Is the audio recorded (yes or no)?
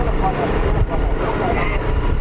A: yes